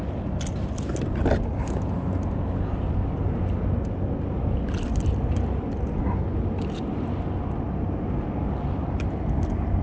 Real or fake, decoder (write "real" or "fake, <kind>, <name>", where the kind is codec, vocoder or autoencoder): real